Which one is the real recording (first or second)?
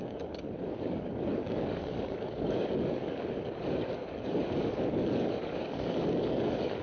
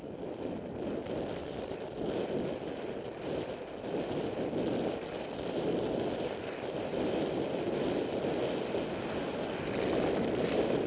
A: second